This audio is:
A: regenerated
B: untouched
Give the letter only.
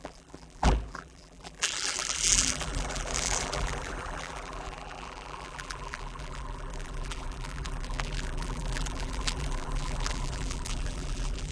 A